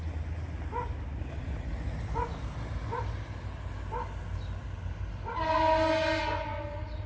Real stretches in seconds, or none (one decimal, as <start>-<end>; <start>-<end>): 0.0-7.1